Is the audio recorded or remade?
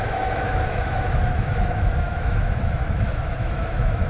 remade